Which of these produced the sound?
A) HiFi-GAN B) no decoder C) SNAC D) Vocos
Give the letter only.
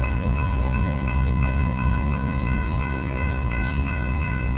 D